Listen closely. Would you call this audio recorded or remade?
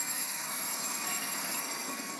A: remade